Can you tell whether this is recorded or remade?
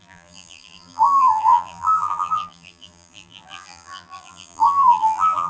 remade